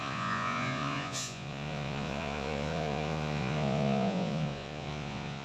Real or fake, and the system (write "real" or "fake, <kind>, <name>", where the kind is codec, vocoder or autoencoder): fake, vocoder, Vocos